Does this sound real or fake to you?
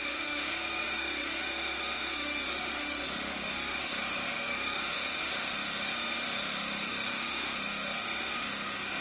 fake